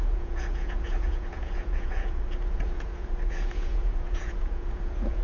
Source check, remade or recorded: remade